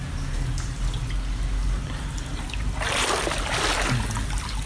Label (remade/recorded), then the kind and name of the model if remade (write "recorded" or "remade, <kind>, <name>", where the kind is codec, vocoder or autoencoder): recorded